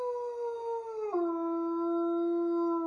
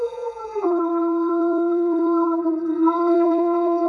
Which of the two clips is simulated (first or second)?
second